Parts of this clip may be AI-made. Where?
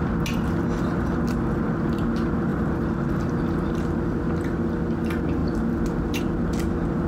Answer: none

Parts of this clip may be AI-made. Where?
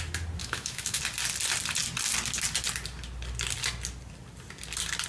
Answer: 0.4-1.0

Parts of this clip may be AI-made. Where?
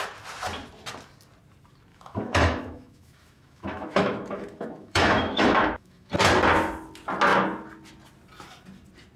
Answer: 1.9-6.1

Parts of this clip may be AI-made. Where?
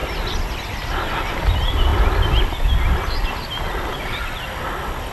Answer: none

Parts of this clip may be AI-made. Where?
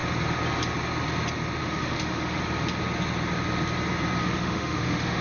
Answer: 1.6-2.4; 4.2-5.2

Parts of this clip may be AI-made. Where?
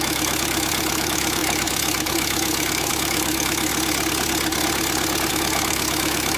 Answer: 0.0-3.7; 5.3-6.4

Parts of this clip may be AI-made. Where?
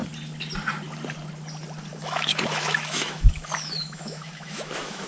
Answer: 1.9-5.1